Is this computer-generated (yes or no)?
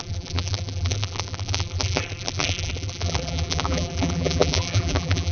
yes